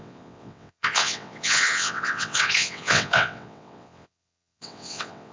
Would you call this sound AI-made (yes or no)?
yes